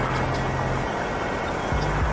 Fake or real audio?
real